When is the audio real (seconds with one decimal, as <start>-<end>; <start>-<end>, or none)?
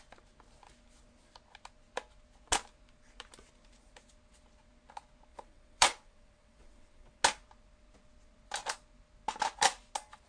0.0-5.3; 7.2-10.3